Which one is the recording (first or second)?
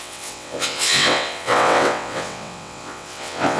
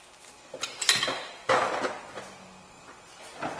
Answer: second